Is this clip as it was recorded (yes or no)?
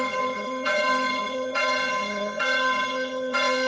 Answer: no